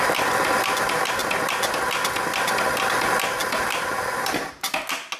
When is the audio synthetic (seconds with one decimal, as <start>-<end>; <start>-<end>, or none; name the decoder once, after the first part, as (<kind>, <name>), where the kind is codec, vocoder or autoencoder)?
3.4-4.8 (vocoder, BigVGAN v2)